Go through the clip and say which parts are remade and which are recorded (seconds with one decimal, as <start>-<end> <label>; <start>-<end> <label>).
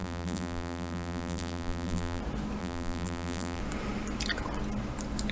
0.0-2.2 remade; 2.2-2.6 recorded; 2.6-3.6 remade; 3.6-5.3 recorded